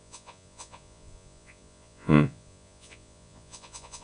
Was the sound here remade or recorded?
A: remade